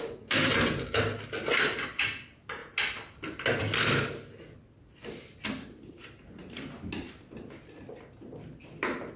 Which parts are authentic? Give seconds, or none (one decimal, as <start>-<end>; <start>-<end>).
0.0-9.2